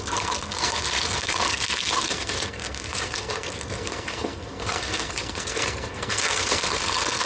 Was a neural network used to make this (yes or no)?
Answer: yes